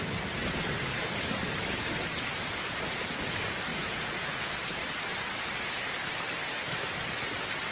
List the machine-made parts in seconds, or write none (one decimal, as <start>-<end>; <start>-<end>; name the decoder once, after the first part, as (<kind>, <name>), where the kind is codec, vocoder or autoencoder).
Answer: 3.7-4.5 (vocoder, Vocos)